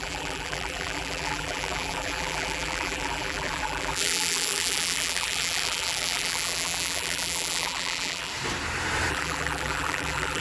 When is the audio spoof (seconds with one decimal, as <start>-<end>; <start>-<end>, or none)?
0.0-8.3; 9.1-10.4